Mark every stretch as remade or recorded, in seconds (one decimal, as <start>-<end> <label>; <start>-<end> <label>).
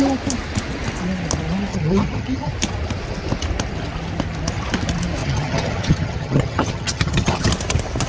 0.0-1.7 recorded; 1.7-2.5 remade; 2.5-5.2 recorded; 5.2-7.5 remade; 7.5-8.1 recorded